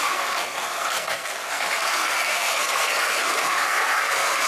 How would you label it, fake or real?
fake